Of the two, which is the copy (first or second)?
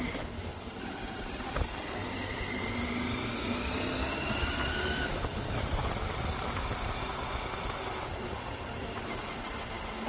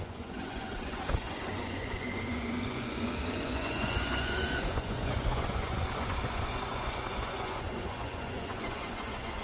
second